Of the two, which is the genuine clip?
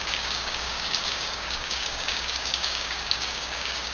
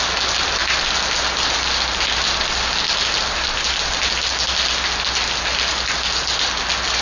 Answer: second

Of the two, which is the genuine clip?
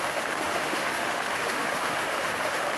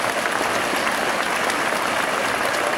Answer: second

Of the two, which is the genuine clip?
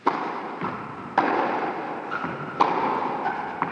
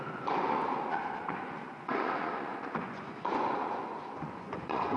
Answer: first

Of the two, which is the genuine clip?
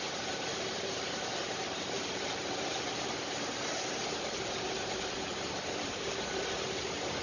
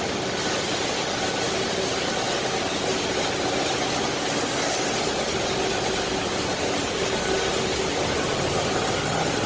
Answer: second